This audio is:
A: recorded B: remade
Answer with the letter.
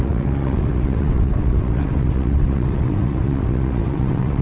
B